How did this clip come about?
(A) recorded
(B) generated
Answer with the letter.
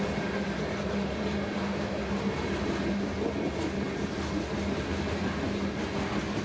A